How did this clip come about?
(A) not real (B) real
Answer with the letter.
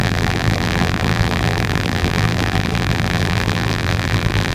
A